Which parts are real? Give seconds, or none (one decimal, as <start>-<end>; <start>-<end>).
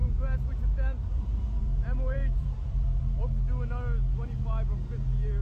3.2-5.4